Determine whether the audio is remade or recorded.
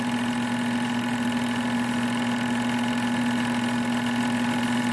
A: recorded